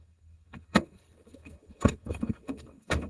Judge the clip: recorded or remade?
remade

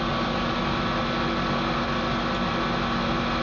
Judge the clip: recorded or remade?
recorded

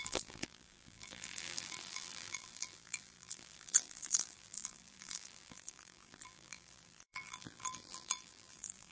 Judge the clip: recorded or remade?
remade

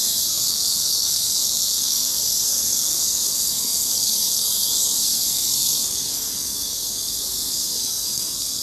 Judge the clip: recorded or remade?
remade